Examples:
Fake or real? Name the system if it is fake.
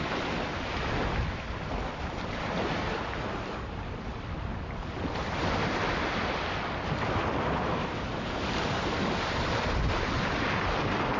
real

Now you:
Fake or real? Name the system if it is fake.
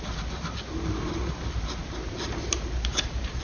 real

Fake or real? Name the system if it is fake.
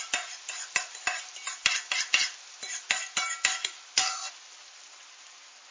real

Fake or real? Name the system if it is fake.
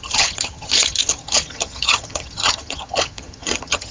fake, vocoder, HiFi-GAN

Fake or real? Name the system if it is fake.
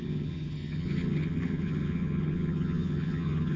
fake, vocoder, HiFi-GAN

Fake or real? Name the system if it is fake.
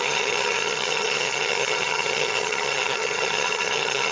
fake, vocoder, HiFi-GAN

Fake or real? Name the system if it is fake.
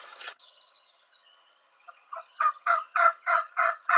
fake, vocoder, HiFi-GAN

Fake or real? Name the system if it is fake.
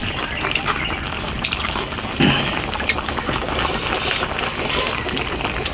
real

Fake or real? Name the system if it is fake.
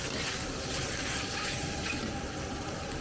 real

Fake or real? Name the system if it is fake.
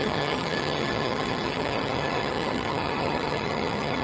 fake, vocoder, HiFi-GAN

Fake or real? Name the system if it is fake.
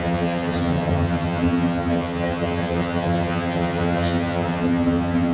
fake, vocoder, HiFi-GAN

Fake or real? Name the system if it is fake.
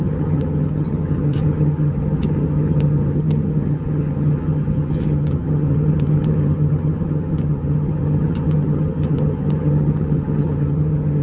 fake, vocoder, HiFi-GAN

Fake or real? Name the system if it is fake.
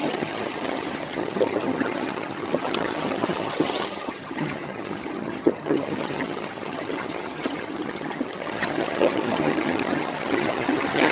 fake, vocoder, HiFi-GAN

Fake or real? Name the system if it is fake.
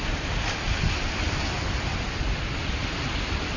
real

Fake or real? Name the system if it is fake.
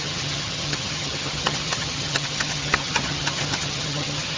fake, vocoder, HiFi-GAN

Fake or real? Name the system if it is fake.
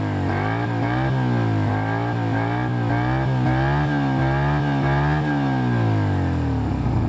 real